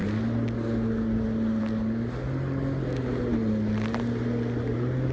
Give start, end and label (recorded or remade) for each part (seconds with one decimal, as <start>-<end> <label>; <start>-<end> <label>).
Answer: 0.0-5.1 recorded